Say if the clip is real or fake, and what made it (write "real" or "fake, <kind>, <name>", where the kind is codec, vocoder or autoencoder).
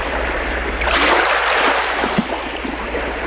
real